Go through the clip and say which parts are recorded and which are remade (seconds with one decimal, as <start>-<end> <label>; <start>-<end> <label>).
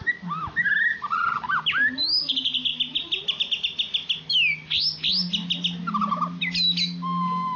0.0-0.9 recorded; 0.9-1.5 remade; 1.5-7.6 recorded